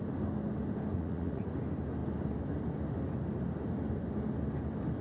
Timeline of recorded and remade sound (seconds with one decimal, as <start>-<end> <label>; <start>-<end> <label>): 0.0-0.9 recorded; 0.9-1.5 remade; 1.5-5.0 recorded